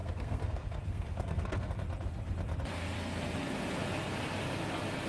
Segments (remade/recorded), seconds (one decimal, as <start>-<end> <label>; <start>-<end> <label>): 0.0-1.7 remade; 1.7-5.1 recorded

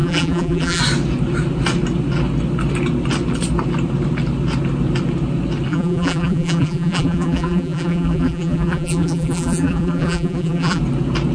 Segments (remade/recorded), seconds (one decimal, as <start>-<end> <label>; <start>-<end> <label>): 0.0-0.8 remade; 0.8-5.7 recorded; 5.7-10.8 remade; 10.8-11.3 recorded

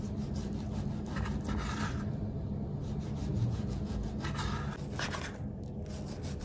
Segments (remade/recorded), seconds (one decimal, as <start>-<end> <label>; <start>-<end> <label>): 0.0-3.3 recorded; 3.3-4.1 remade; 4.1-6.4 recorded

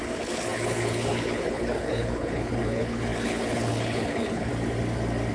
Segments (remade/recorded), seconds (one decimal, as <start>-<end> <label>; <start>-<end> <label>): 0.0-4.5 remade; 4.5-5.3 recorded

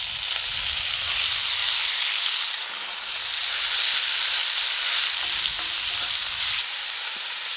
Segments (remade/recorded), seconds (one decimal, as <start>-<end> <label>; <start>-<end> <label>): 0.0-7.6 recorded